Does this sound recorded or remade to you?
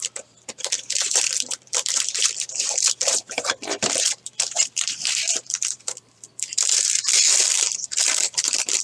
remade